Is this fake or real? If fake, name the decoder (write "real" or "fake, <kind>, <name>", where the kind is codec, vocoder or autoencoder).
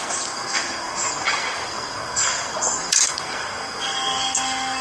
fake, codec, SNAC